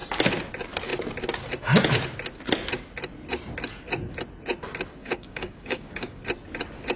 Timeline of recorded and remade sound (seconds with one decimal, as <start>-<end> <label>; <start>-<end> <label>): 0.0-5.0 recorded; 5.0-6.2 remade; 6.2-7.0 recorded